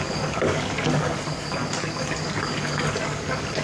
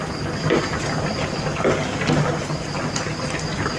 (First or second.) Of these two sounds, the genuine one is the second